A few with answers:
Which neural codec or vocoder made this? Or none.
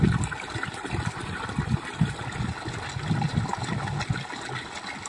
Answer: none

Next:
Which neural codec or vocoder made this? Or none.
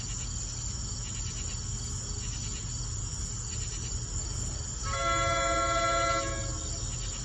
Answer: none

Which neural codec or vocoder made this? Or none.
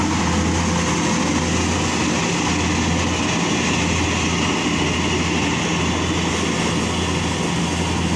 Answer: none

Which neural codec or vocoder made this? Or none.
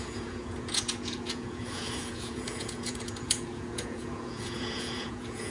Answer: vocoder, Vocos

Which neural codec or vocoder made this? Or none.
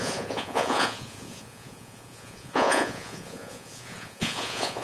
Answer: vocoder, Vocos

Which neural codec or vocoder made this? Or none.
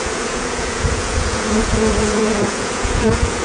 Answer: vocoder, Vocos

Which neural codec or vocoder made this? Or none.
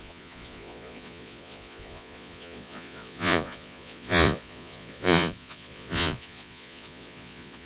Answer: vocoder, Vocos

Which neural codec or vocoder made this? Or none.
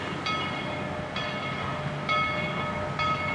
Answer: none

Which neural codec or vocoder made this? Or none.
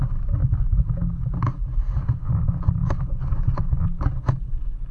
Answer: none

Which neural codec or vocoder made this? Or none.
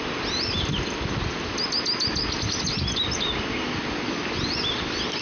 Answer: none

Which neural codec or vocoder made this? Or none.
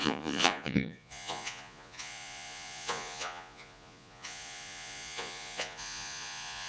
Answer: vocoder, Vocos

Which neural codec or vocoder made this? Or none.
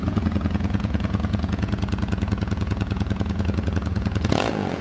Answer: vocoder, Vocos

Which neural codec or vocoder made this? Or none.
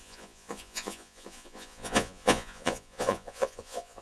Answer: vocoder, Vocos